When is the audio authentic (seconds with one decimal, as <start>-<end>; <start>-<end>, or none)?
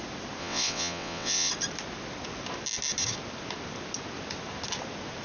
0.0-0.4; 1.5-5.2